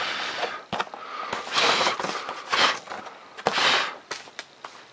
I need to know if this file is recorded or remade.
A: recorded